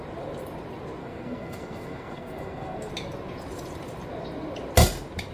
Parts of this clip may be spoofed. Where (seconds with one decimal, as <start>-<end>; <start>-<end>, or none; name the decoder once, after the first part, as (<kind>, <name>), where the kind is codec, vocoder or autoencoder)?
1.0-2.9 (codec, SNAC)